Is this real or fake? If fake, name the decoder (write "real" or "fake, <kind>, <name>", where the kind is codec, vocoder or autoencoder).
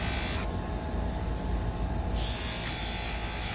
real